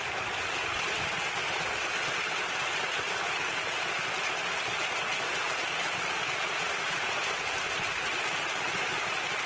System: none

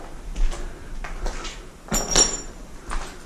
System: none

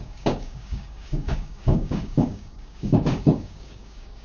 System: codec, DAC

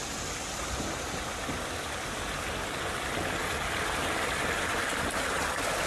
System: none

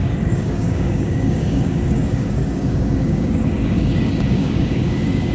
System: codec, DAC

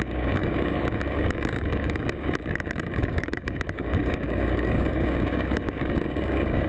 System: codec, DAC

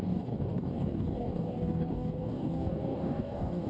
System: codec, DAC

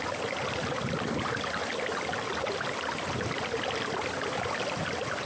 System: none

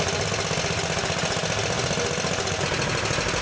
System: none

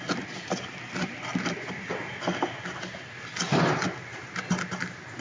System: none